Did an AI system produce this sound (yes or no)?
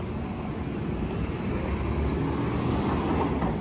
no